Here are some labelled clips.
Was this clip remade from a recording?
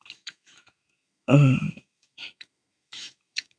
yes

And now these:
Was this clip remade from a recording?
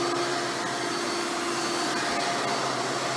no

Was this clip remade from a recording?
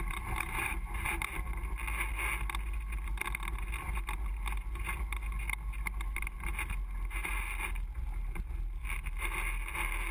no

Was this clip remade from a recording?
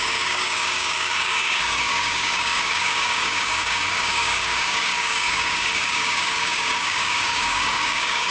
yes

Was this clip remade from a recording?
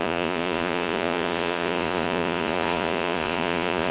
yes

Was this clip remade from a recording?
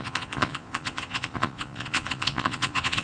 yes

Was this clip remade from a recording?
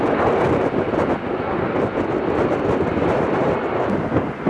no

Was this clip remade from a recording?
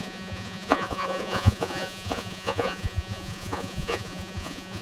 yes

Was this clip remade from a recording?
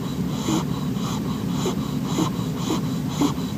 no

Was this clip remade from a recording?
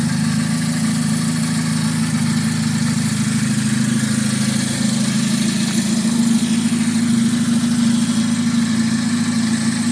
no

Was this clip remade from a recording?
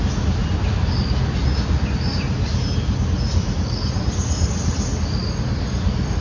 no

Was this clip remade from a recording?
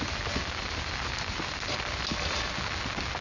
no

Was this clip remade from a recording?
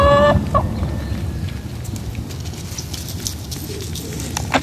no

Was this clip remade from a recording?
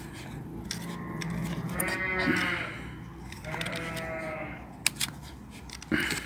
no